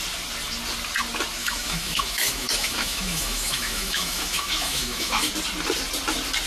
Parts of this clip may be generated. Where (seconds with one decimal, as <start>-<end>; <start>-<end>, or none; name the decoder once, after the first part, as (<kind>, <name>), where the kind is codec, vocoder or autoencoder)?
1.4-5.3 (autoencoder, DAC-VAE)